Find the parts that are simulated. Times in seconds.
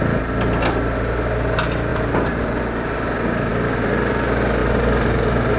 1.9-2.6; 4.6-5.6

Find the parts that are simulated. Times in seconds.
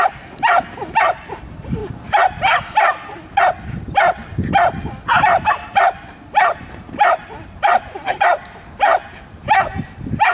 0.0-1.8; 5.5-10.3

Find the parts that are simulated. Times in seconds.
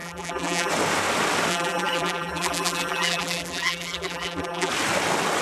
0.0-0.7; 1.5-4.7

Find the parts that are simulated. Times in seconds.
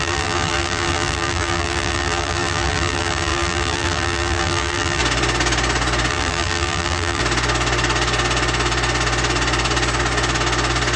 0.0-5.0; 6.1-7.2